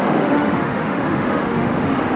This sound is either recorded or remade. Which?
remade